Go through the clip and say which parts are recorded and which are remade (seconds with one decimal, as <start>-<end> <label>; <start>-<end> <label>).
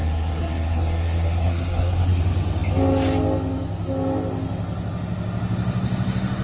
0.0-2.2 remade; 2.2-6.4 recorded